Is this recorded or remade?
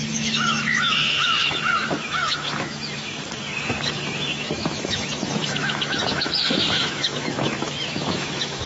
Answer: remade